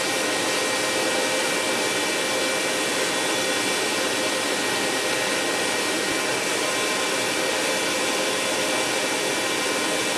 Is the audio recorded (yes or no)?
yes